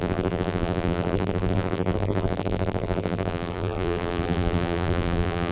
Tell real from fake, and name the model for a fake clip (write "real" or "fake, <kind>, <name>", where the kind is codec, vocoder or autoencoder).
fake, vocoder, BigVGAN v2